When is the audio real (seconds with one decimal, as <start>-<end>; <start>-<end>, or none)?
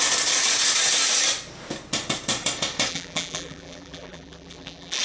0.0-2.9